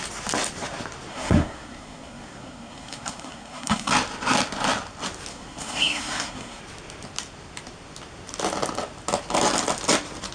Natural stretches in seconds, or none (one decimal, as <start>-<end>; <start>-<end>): 0.0-1.1; 3.9-5.3; 6.6-10.3